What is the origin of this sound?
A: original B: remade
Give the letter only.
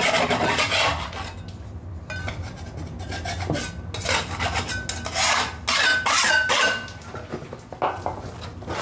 A